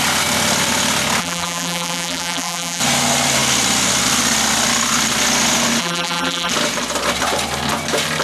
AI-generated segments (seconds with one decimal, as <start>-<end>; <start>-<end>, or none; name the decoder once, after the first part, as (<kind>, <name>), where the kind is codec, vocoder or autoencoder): 1.2-2.8 (vocoder, BigVGAN v2); 5.8-6.5